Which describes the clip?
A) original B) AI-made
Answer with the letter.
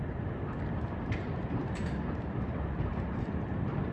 B